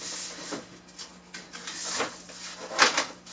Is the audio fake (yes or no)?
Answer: no